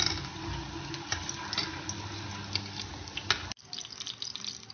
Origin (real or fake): real